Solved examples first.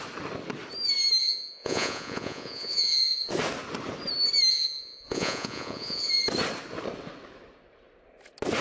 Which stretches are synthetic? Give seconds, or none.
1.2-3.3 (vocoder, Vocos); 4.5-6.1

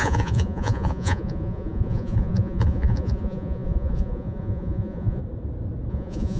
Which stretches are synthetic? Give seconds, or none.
0.0-5.2 (vocoder, Vocos); 5.9-6.4

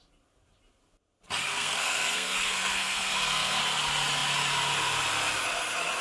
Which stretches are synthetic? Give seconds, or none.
1.5-3.6 (codec, SNAC)

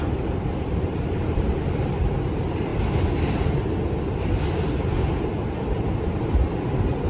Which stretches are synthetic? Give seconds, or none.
0.0-2.7 (vocoder, BigVGAN v2); 6.0-7.1

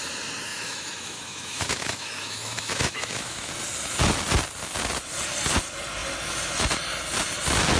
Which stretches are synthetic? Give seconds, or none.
0.5-3.5 (autoencoder, DAC-VAE)

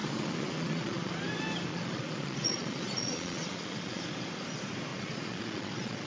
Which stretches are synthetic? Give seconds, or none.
0.0-1.1 (vocoder, Vocos); 1.7-4.0; 4.9-6.1

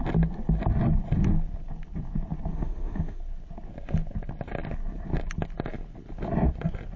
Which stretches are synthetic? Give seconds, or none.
2.5-3.2 (autoencoder, DAC-VAE)